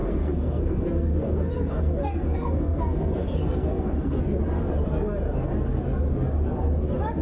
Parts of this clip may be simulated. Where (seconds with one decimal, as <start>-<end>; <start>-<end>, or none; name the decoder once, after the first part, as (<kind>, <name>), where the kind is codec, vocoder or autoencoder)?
0.0-4.2 (codec, SNAC)

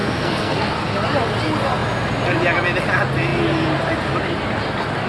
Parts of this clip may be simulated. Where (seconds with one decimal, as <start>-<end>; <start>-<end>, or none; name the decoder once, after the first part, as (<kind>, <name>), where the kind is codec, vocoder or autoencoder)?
0.0-0.7 (codec, SNAC)

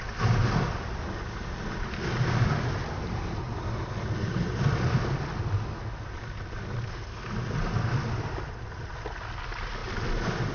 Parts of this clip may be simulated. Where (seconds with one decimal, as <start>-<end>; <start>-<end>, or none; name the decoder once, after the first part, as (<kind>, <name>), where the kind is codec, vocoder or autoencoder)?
none

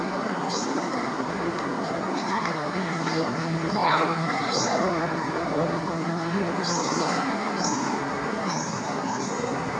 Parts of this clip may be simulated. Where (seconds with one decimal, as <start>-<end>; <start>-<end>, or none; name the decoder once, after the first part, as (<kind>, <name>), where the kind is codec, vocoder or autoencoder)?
0.0-9.8 (codec, SNAC)

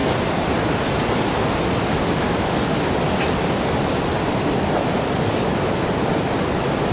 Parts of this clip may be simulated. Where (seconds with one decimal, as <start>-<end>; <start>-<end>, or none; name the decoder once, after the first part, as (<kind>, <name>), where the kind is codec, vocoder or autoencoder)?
none

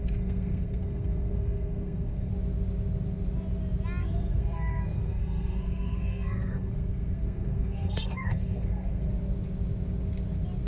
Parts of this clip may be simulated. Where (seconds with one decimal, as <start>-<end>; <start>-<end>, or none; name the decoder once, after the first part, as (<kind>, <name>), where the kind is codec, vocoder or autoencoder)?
0.0-2.3 (codec, SNAC); 4.0-9.1

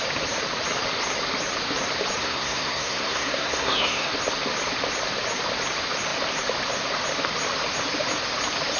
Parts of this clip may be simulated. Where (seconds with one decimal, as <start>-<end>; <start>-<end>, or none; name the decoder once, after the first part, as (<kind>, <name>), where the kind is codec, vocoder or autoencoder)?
2.2-4.1 (codec, SNAC)

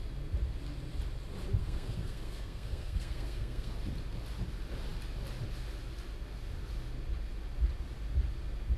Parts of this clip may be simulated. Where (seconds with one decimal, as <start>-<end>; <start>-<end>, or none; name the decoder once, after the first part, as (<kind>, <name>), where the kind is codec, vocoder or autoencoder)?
1.6-3.7 (codec, SNAC)